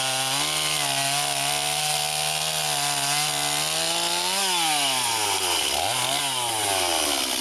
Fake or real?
real